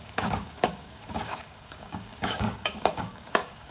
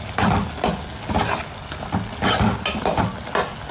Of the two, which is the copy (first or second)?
first